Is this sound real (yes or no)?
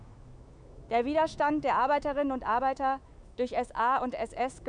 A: no